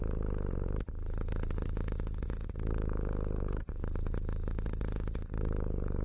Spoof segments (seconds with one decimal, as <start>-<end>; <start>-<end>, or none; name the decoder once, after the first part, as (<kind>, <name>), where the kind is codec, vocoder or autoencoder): none